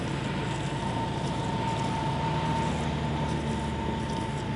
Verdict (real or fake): real